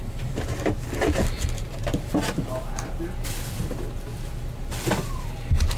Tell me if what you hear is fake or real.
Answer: real